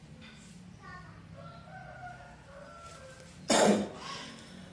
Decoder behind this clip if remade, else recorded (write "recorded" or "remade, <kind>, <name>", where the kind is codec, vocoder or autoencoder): recorded